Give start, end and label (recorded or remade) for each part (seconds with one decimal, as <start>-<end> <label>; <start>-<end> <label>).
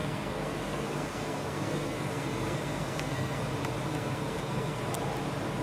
0.0-3.4 remade; 3.4-3.9 recorded; 3.9-4.8 remade; 4.8-5.6 recorded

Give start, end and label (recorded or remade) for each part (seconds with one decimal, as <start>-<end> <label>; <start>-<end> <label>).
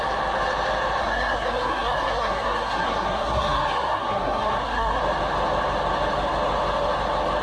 0.0-1.0 recorded; 1.0-5.0 remade; 5.0-7.4 recorded